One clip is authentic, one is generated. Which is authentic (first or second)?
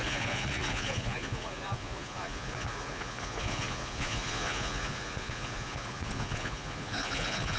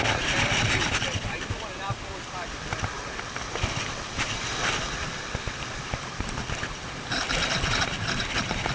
second